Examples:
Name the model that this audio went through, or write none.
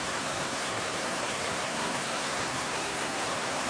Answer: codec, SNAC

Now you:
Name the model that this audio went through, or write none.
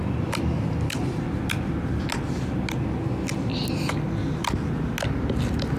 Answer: none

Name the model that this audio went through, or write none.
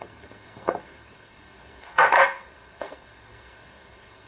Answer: codec, SNAC